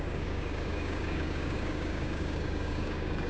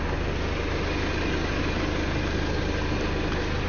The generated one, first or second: first